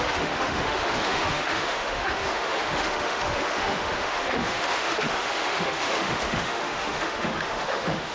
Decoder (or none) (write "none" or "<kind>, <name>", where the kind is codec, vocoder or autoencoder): autoencoder, DAC-VAE